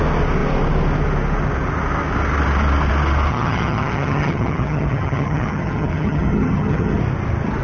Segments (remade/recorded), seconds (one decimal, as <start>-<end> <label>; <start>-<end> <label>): 0.0-3.3 recorded; 3.3-7.0 remade; 7.0-7.6 recorded